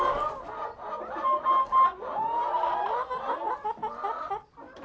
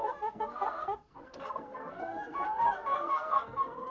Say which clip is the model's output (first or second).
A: second